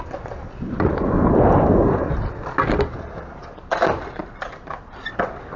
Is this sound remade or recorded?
recorded